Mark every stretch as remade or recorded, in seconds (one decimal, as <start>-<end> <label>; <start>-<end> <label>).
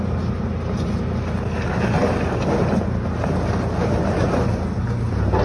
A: 0.0-5.4 recorded